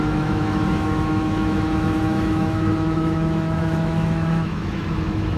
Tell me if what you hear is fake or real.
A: fake